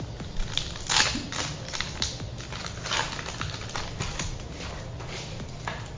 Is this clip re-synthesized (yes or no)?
no